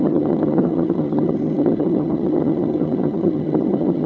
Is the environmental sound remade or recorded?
remade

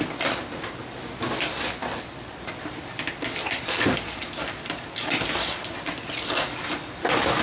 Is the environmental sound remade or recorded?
recorded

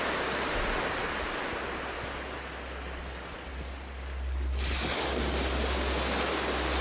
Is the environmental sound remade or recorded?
recorded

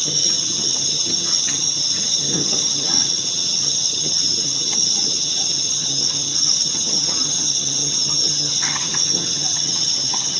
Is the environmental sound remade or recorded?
remade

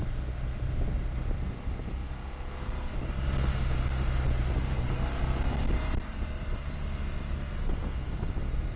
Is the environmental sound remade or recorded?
recorded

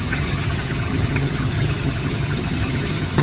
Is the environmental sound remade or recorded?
remade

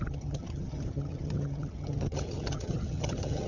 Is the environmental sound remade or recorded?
remade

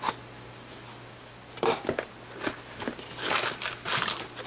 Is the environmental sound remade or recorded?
recorded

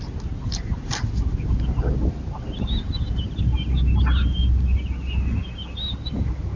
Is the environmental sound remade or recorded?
recorded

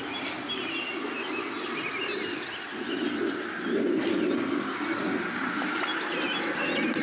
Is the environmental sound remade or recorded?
recorded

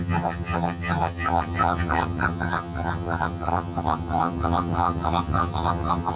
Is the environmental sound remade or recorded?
remade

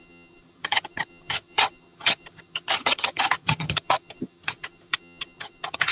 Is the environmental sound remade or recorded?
remade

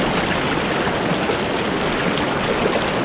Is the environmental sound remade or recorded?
recorded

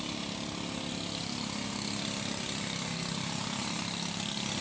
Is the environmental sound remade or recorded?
recorded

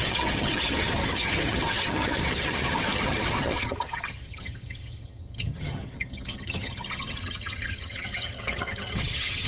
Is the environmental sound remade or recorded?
remade